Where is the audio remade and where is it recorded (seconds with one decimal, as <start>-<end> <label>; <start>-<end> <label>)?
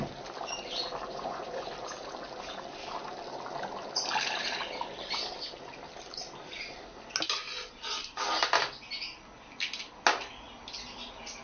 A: 0.0-1.1 recorded; 1.1-1.7 remade; 1.7-11.4 recorded